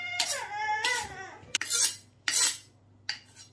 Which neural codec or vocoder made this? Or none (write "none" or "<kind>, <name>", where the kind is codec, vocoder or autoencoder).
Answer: none